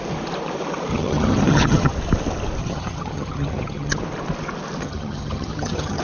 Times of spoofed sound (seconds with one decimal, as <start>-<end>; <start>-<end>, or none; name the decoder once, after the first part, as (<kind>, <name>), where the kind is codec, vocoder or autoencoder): 0.9-1.9 (vocoder, HiFi-GAN); 2.6-4.0; 4.8-6.0